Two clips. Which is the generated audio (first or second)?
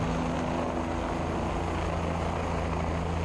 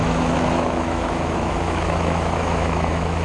second